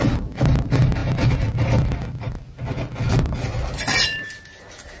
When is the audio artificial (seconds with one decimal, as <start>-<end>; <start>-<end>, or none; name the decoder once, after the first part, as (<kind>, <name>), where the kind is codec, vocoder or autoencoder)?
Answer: none